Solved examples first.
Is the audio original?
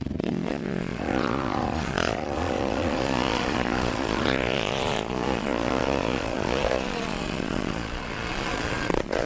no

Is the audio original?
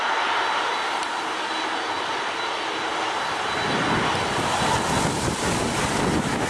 yes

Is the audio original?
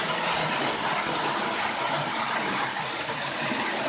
yes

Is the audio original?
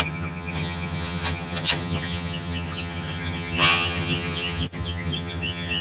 no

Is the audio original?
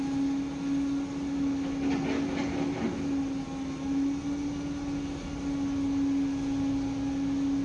yes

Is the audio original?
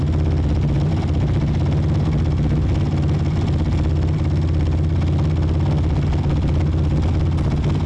yes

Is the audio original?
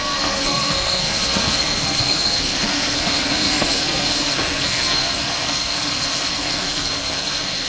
no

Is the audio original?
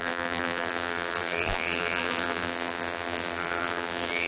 no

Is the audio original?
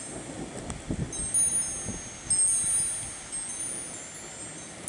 yes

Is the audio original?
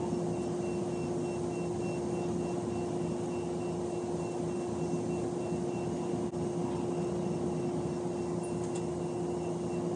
yes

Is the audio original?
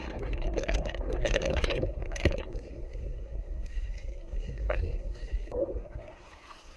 no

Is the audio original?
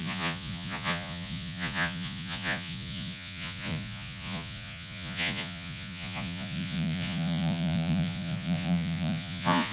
no